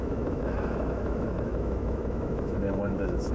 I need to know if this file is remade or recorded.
remade